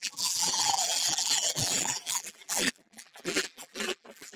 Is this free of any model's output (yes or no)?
no